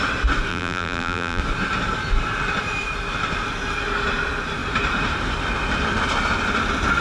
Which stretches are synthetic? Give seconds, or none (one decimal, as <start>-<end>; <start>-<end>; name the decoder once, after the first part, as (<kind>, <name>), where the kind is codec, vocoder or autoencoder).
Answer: 0.5-1.4 (vocoder, BigVGAN v2)